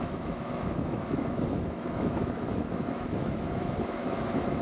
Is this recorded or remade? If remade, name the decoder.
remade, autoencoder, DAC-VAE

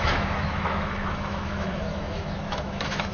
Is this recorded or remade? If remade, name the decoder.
remade, autoencoder, DAC-VAE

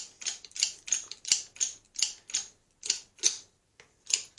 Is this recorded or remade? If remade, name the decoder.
recorded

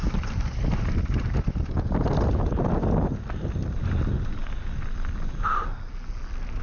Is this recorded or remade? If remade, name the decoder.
recorded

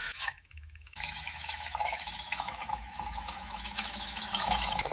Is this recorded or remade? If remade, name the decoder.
remade, autoencoder, DAC-VAE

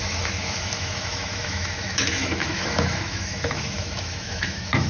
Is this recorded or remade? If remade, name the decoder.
remade, autoencoder, DAC-VAE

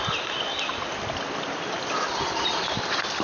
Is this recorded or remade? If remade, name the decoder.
recorded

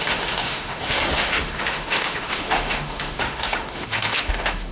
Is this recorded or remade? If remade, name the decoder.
remade, autoencoder, DAC-VAE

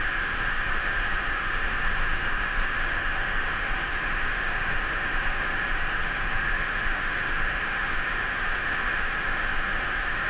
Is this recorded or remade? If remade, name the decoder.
remade, autoencoder, DAC-VAE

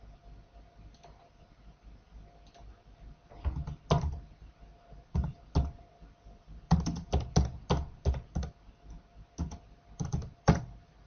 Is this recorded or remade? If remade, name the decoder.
recorded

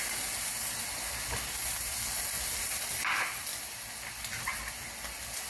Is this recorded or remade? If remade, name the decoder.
recorded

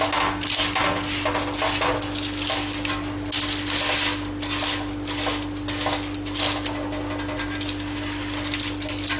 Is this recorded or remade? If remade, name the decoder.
recorded